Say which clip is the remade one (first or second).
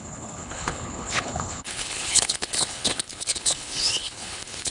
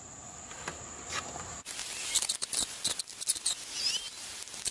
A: first